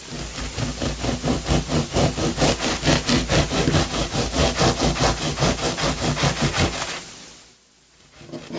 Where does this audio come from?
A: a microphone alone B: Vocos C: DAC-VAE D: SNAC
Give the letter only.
A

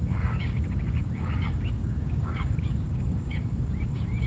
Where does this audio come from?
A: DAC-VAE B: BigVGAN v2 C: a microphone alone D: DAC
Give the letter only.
D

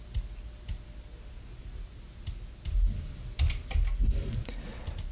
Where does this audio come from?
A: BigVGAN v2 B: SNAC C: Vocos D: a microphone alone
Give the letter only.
D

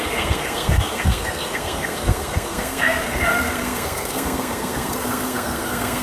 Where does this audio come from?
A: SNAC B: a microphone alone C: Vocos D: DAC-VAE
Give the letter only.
A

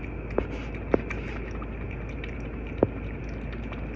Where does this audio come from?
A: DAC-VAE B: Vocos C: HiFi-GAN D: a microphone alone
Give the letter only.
D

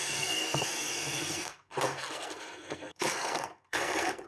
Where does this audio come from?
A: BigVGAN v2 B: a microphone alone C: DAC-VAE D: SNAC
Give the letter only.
D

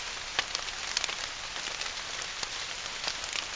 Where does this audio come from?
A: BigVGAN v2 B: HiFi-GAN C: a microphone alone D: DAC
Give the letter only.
C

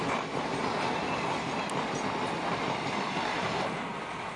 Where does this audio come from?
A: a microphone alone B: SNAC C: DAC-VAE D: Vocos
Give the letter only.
A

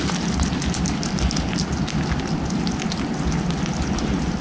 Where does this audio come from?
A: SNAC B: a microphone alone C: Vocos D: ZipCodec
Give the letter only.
B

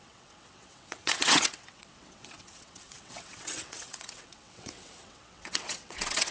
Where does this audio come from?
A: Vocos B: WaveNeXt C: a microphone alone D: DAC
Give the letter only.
B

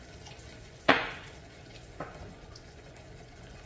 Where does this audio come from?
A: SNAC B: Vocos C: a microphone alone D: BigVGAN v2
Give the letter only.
B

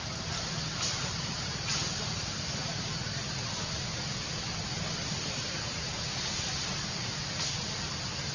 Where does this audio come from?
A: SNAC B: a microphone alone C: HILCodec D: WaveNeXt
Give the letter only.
B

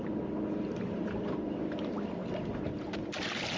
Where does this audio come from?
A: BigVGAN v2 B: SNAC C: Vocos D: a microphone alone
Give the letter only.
D